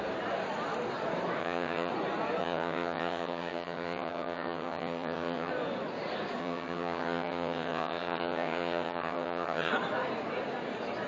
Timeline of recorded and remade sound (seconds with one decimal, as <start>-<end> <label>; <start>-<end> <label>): 0.0-1.4 recorded; 1.4-1.9 remade; 1.9-2.4 recorded; 2.4-5.5 remade; 5.5-6.4 recorded; 6.4-9.7 remade; 9.7-11.1 recorded